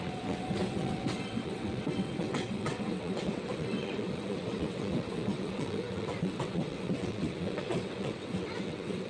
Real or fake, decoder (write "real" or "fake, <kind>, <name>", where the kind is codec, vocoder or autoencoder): fake, vocoder, WaveNeXt